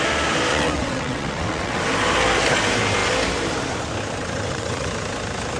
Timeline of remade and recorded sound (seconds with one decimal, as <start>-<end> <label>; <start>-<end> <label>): 0.0-0.5 recorded; 0.5-1.8 remade; 1.8-4.2 recorded; 4.2-4.9 remade; 4.9-5.6 recorded

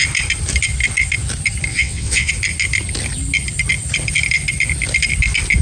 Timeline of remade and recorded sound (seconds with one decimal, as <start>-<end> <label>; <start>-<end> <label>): 0.0-1.7 recorded; 1.7-2.3 remade; 2.3-5.6 recorded

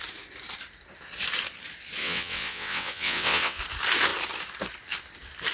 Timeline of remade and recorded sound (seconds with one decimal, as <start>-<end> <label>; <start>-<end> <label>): 0.0-2.0 recorded; 2.0-3.6 remade; 3.6-5.5 recorded

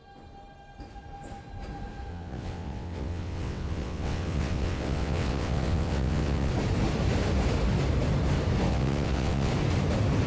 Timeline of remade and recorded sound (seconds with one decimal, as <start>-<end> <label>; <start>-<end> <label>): 0.0-2.1 recorded; 2.1-6.5 remade; 6.5-8.7 recorded; 8.7-9.5 remade; 9.5-10.3 recorded

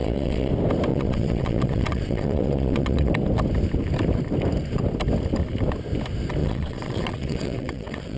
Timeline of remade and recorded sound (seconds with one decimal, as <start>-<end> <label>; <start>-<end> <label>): 0.0-0.5 remade; 0.5-0.9 recorded; 0.9-3.1 remade; 3.1-6.4 recorded; 6.4-8.2 remade

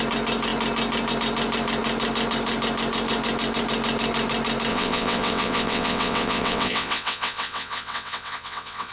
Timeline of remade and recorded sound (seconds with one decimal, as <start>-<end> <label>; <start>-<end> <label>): 0.0-4.7 recorded; 4.7-8.9 remade

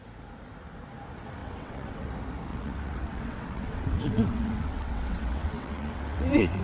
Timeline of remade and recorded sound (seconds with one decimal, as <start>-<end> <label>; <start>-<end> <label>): 0.0-1.4 recorded; 1.4-2.1 remade; 2.1-2.5 recorded; 2.5-6.6 remade